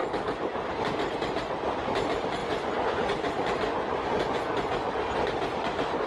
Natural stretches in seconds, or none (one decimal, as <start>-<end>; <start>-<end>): 0.0-2.4; 4.9-6.1